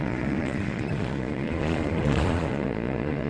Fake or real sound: fake